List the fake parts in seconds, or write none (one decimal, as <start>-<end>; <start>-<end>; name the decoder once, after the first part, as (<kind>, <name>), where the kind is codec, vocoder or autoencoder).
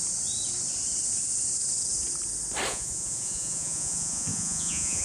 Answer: 2.7-5.0 (vocoder, Vocos)